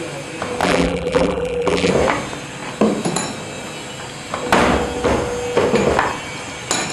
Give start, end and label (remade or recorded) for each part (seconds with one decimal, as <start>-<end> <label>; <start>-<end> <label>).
0.0-0.6 recorded; 0.6-1.9 remade; 1.9-6.9 recorded